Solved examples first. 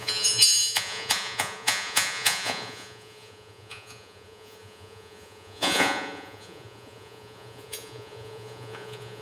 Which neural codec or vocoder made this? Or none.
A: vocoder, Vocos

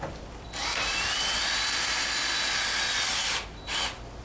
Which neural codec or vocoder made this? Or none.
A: none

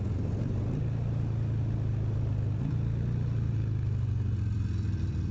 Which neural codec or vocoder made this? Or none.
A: none